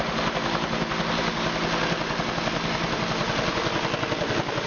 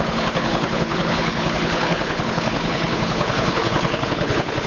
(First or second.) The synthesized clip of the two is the second